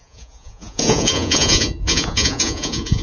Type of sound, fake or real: fake